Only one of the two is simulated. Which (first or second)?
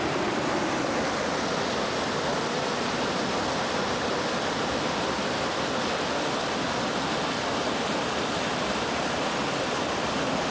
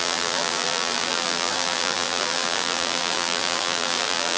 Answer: second